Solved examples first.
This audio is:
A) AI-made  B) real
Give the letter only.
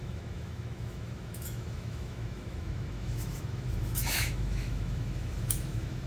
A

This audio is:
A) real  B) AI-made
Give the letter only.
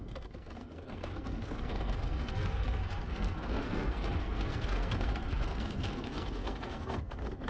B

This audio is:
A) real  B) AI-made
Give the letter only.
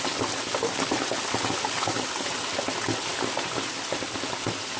A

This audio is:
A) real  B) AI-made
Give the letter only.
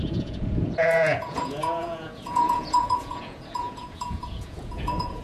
B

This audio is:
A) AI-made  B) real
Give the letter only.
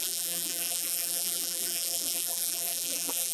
A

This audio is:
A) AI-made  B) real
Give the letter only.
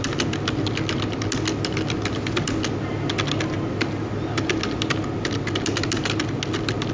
B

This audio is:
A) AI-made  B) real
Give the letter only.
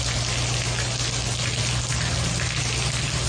B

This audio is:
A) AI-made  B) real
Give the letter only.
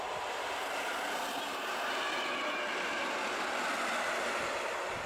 B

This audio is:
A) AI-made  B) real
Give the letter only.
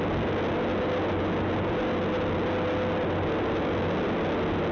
B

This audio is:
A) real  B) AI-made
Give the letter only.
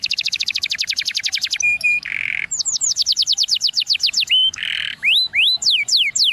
B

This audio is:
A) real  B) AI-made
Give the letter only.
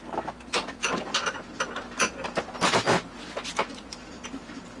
A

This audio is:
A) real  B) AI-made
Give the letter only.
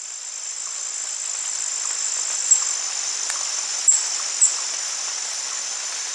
A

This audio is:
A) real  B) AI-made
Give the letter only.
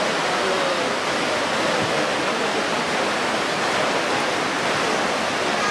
A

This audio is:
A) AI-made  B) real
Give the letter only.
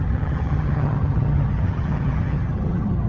A